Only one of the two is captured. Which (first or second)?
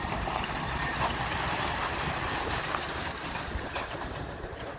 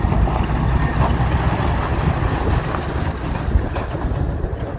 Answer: second